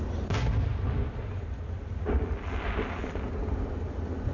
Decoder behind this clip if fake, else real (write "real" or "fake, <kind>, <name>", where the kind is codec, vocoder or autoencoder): real